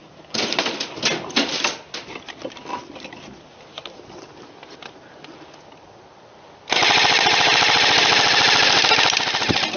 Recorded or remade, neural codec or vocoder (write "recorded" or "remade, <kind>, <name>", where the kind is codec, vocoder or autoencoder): recorded